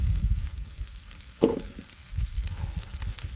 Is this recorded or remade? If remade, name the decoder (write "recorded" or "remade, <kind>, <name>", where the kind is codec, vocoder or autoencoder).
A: remade, codec, SNAC